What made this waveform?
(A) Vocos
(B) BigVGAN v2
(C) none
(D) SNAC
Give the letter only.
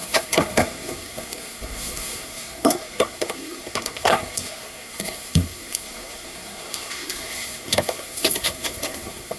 D